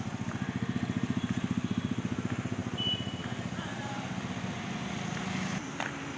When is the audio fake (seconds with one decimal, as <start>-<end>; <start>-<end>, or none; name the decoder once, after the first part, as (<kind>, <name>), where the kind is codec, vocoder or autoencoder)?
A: none